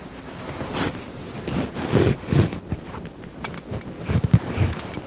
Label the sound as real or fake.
real